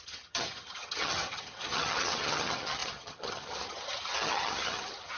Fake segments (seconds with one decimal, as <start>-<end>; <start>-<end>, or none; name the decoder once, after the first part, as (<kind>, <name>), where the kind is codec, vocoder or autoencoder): 0.0-5.2 (vocoder, HiFi-GAN)

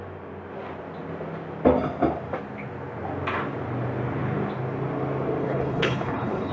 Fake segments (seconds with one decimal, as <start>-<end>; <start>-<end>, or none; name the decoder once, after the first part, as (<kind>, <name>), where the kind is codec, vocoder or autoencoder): 5.4-6.5 (codec, HILCodec)

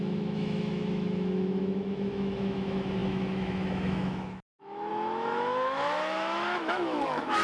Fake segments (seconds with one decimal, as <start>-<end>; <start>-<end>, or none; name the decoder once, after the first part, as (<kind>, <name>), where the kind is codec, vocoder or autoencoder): 0.0-7.4 (autoencoder, DAC-VAE)

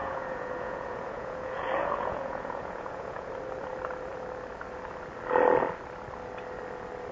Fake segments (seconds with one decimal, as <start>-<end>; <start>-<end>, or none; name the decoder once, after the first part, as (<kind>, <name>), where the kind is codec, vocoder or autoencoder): 0.0-3.3 (vocoder, Vocos)